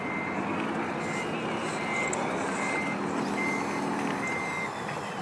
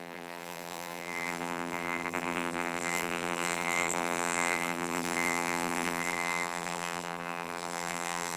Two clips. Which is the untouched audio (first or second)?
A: first